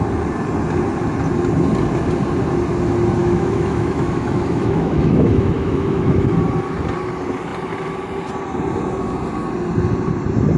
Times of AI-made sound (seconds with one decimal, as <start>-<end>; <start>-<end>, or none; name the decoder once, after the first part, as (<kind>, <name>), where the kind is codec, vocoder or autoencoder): 3.2-6.3 (autoencoder, DAC-VAE)